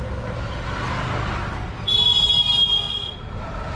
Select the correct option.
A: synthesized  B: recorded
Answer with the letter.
B